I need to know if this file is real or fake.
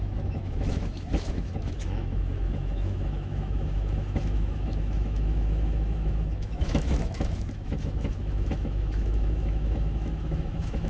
fake